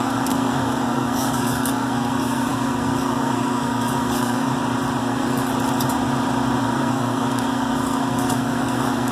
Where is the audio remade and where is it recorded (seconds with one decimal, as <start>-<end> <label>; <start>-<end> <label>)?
0.0-4.5 remade; 4.5-5.0 recorded; 5.0-5.5 remade; 5.5-6.6 recorded; 6.6-9.1 remade